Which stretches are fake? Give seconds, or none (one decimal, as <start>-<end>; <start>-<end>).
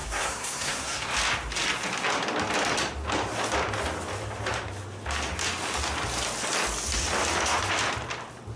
0.0-1.1